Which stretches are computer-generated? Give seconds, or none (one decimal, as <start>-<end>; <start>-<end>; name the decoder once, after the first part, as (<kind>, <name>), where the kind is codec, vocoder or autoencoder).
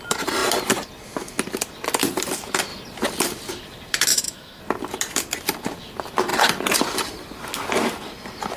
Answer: 4.1-4.6 (autoencoder, DAC-VAE)